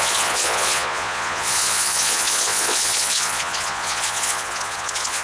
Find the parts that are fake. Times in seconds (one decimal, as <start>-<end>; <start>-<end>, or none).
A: 0.0-5.2